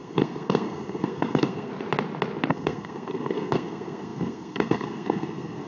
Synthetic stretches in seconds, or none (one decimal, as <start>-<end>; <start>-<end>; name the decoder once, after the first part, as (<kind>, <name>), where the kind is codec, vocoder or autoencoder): 0.0-1.7 (codec, SNAC); 2.5-5.7